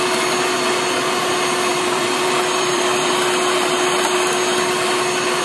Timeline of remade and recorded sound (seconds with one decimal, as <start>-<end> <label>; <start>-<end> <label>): 0.0-1.7 recorded; 1.7-3.1 remade; 3.1-5.4 recorded